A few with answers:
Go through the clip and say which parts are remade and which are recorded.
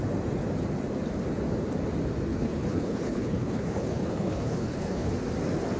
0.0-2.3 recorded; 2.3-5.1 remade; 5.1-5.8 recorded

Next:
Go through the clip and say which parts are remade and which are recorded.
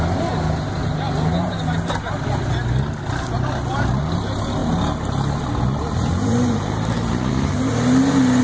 0.0-8.4 recorded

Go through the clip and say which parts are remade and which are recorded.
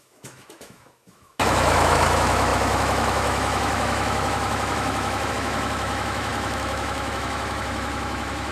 0.0-8.5 remade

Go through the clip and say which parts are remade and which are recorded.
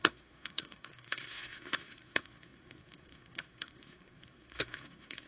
0.0-5.3 remade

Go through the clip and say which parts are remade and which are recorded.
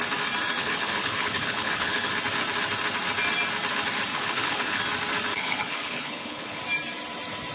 0.0-0.6 recorded; 0.6-2.1 remade; 2.1-4.1 recorded; 4.1-4.8 remade; 4.8-5.3 recorded; 5.3-6.6 remade; 6.6-7.5 recorded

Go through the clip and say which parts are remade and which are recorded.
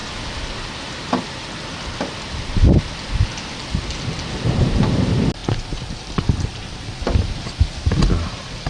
0.0-8.7 recorded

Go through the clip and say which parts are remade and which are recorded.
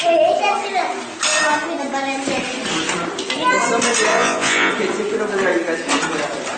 0.0-4.1 recorded; 4.1-4.7 remade; 4.7-6.6 recorded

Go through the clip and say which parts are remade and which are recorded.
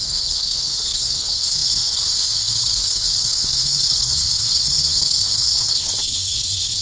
0.0-6.8 remade